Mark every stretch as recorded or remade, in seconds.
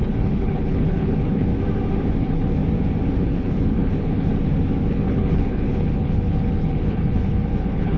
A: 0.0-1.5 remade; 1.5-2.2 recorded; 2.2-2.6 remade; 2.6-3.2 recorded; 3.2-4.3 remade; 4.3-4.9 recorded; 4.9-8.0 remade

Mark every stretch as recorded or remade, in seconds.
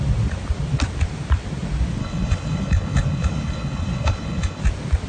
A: 0.0-2.0 recorded; 2.0-4.6 remade; 4.6-5.1 recorded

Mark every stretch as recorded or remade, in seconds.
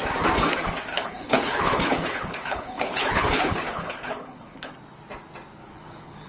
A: 0.0-0.9 recorded; 0.9-4.7 remade; 4.7-5.6 recorded; 5.6-6.3 remade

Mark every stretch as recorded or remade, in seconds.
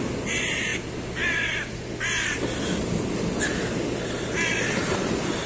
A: 0.0-5.5 recorded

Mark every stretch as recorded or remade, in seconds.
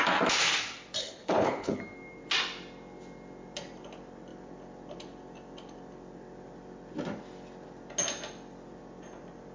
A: 0.0-1.0 recorded; 1.0-1.8 remade; 1.8-9.5 recorded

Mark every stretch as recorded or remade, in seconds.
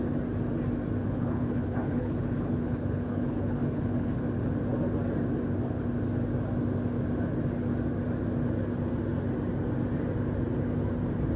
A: 0.0-1.0 recorded; 1.0-4.2 remade; 4.2-11.4 recorded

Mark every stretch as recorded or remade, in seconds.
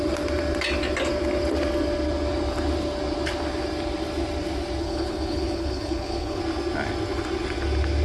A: 0.0-4.8 recorded; 4.8-6.4 remade; 6.4-8.0 recorded